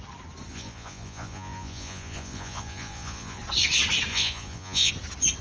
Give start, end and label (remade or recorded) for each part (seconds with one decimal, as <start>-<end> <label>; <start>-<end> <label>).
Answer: 0.0-0.5 recorded; 0.5-3.4 remade; 3.4-4.1 recorded; 4.1-4.9 remade; 4.9-5.4 recorded